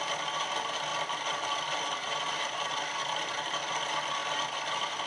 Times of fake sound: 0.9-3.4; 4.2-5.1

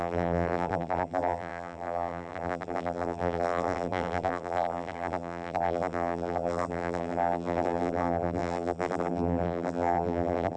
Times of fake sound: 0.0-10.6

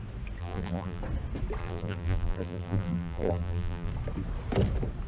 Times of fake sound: 0.4-1.0; 1.6-3.9

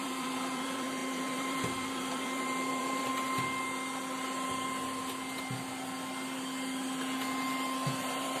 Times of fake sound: 0.0-3.1; 8.0-8.4